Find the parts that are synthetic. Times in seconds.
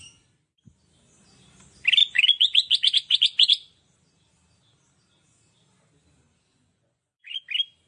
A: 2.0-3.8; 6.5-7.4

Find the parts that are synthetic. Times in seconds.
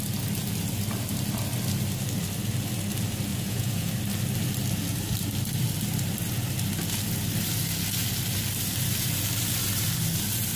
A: 3.3-3.9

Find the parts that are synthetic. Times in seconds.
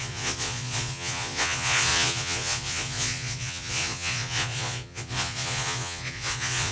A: 0.0-6.7